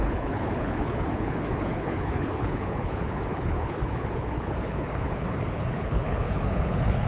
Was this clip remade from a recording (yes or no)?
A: yes